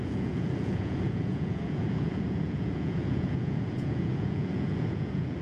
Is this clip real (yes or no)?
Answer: no